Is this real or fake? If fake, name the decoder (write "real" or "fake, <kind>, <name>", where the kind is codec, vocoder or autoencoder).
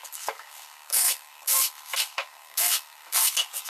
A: fake, codec, SNAC